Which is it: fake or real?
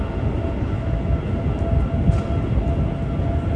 real